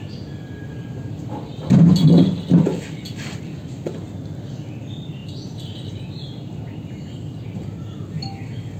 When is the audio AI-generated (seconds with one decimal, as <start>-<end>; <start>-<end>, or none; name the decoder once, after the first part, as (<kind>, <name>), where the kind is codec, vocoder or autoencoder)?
2.7-3.4 (vocoder, BigVGAN v2)